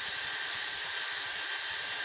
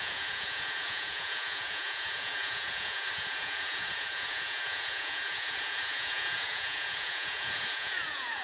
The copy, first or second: second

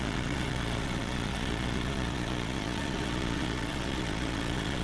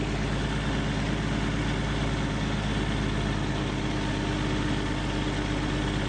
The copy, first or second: first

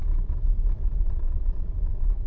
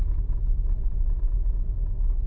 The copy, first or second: first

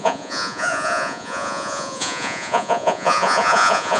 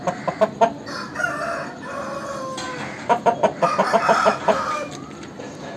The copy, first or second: first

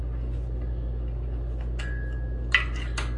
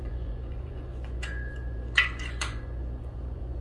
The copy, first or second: second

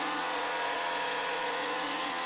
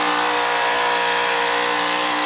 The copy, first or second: first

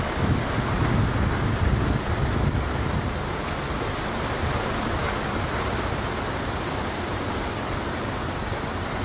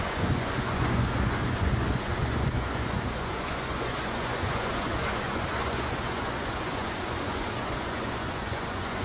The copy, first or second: second